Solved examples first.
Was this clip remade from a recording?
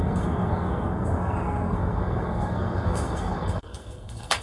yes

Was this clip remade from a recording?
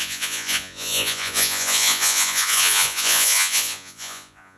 yes